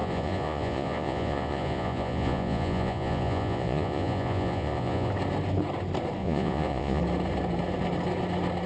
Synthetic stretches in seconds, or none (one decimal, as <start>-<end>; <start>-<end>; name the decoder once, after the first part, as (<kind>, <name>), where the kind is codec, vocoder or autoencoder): 0.0-5.1 (vocoder, Vocos); 6.2-7.0